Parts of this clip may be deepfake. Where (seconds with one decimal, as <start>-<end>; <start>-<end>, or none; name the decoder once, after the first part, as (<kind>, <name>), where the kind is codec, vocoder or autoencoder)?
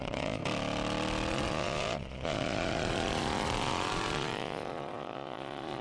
0.0-0.4 (vocoder, Vocos); 1.3-5.8